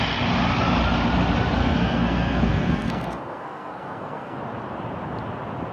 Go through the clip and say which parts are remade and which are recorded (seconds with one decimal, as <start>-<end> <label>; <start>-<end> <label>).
0.0-1.6 recorded; 1.6-4.4 remade; 4.4-5.7 recorded